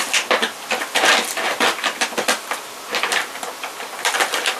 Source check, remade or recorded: remade